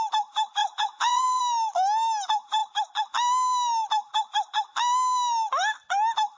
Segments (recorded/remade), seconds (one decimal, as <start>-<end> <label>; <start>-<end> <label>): 0.0-0.6 recorded; 0.6-1.4 remade; 1.4-6.4 recorded